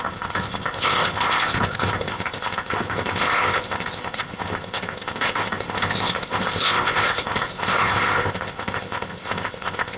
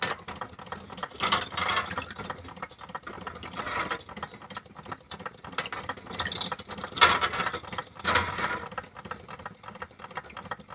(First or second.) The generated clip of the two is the first